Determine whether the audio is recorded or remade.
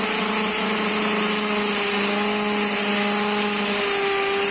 recorded